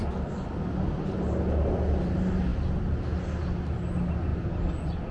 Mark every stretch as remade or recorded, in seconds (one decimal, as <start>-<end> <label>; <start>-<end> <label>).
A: 0.0-5.1 recorded